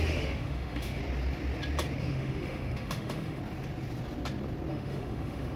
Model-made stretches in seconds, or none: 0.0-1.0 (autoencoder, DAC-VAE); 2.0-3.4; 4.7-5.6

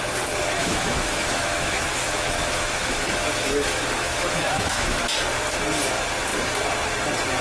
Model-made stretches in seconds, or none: 0.6-5.0 (autoencoder, DAC-VAE)